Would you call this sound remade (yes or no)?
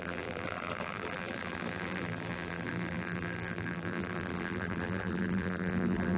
yes